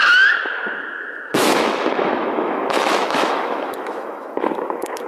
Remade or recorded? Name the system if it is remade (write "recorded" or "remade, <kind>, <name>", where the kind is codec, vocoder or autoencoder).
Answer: remade, autoencoder, DAC-VAE